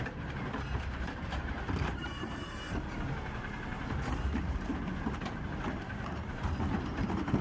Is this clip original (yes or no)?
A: no